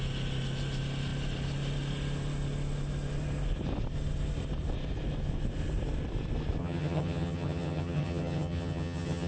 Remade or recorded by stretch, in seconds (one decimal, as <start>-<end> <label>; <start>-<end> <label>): 0.0-6.6 recorded; 6.6-9.3 remade